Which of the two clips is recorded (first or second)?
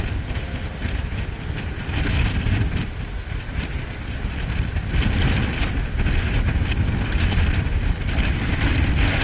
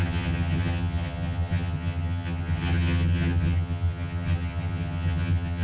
first